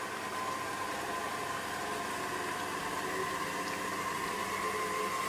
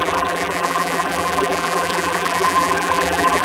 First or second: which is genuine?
first